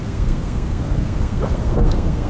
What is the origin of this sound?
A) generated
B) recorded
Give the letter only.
A